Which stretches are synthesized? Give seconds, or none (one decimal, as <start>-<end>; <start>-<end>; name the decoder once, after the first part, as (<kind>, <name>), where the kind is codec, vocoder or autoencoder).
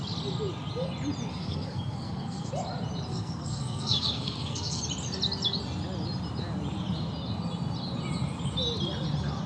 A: 1.3-2.5 (codec, SNAC); 3.1-4.8